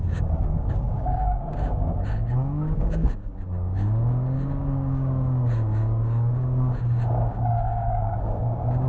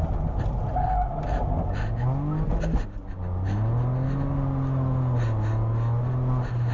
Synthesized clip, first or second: first